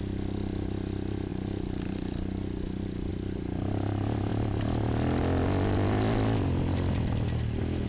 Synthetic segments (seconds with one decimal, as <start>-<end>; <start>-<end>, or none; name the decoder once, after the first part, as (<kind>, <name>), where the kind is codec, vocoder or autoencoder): none